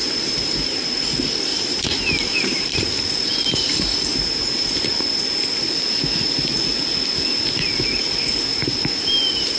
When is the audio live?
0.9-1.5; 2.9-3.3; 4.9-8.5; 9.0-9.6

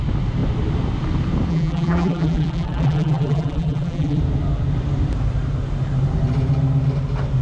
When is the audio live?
0.0-1.5; 4.2-7.4